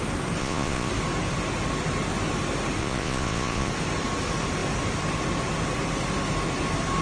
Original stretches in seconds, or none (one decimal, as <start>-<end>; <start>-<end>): 0.0-0.4; 0.9-2.8; 3.7-7.0